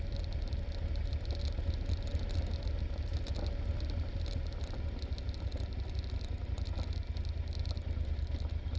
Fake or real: real